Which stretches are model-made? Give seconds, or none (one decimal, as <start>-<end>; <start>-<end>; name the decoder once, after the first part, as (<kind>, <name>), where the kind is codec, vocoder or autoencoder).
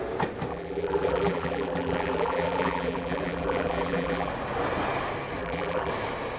0.5-4.3 (vocoder, BigVGAN v2); 5.4-5.9